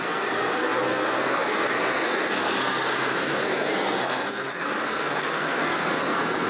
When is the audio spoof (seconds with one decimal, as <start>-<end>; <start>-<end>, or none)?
0.0-6.5

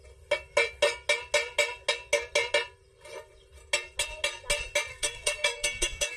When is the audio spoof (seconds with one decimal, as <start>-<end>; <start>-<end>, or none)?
4.9-6.2